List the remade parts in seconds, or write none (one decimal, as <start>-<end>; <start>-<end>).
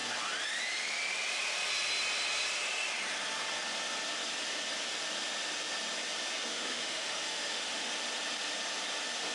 6.5-7.9